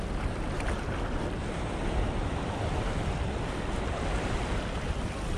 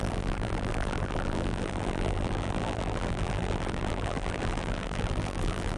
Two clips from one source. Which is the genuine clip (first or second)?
first